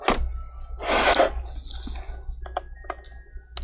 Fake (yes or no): no